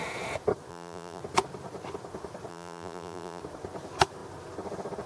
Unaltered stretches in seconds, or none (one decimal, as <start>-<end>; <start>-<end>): 0.0-0.7; 1.2-2.5; 3.4-5.1